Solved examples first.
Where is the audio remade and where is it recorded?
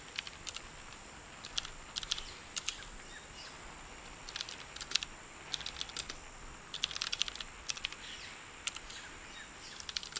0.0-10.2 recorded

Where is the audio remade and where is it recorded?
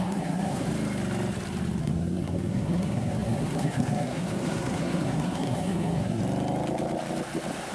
0.0-0.7 remade; 0.7-1.8 recorded; 1.8-6.2 remade; 6.2-7.7 recorded